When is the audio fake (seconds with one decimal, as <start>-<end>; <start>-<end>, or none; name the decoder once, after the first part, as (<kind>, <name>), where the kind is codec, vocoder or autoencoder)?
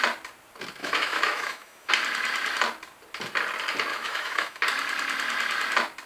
0.8-1.9 (autoencoder, DAC-VAE); 3.9-4.6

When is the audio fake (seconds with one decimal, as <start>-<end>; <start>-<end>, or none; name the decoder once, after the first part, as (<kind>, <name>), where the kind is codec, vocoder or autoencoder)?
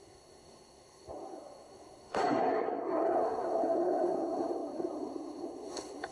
0.0-6.1 (codec, SNAC)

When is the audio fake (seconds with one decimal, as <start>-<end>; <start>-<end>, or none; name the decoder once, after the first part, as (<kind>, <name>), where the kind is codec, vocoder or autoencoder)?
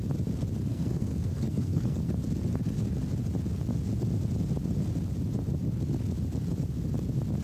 0.7-2.1 (codec, SNAC)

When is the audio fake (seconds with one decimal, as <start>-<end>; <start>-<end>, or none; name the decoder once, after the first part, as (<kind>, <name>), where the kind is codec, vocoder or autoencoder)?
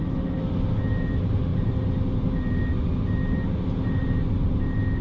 none